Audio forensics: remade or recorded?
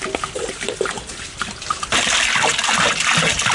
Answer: recorded